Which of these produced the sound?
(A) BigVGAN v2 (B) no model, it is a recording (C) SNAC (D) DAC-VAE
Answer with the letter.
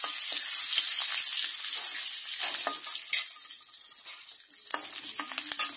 B